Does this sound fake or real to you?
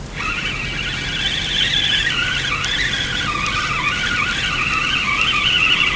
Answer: real